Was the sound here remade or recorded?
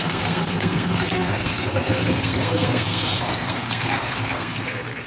remade